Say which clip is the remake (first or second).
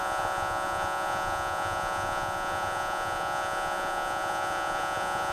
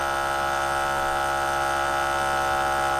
first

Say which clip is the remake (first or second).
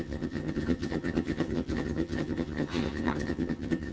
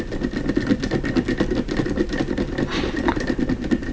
first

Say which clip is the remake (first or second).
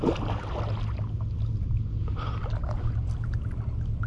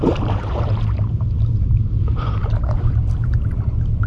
second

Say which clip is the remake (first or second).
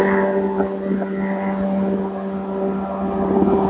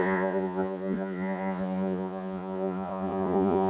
second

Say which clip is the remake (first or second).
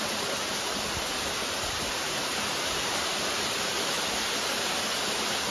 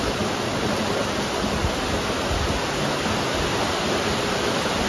first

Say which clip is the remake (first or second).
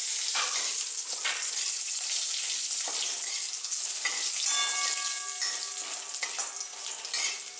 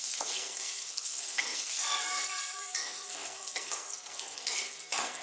second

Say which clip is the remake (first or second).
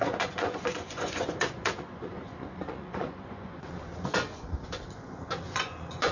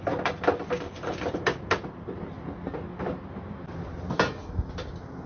first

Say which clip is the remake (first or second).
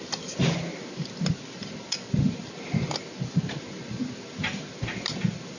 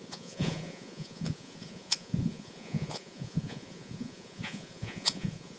second